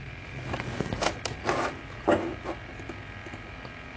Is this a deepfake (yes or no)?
no